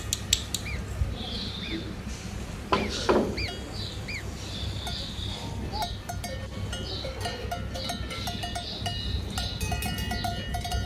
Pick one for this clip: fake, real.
real